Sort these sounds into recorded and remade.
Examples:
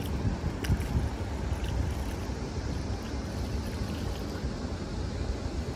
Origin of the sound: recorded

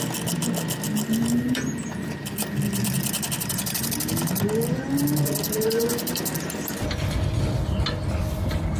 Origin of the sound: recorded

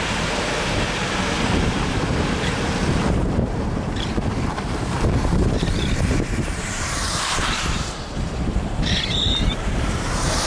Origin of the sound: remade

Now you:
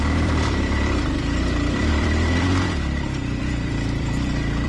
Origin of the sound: remade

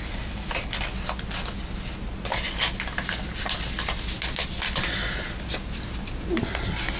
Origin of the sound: recorded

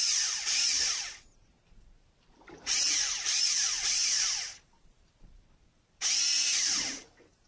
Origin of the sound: remade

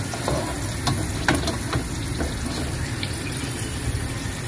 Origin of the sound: recorded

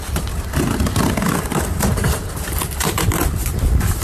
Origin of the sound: remade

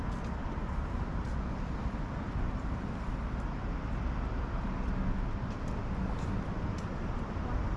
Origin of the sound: recorded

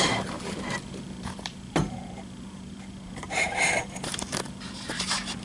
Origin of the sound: remade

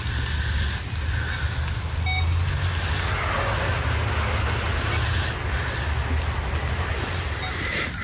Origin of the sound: recorded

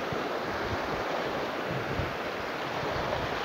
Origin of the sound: recorded